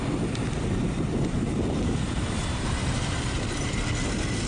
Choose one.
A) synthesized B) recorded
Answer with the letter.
B